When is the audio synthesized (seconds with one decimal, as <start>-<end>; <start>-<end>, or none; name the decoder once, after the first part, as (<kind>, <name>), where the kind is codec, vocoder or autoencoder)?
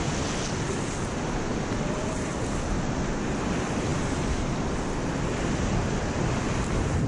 1.5-2.3 (vocoder, BigVGAN v2); 3.9-6.6